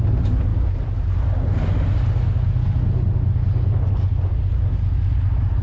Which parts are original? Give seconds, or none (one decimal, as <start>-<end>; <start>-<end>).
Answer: 0.0-5.6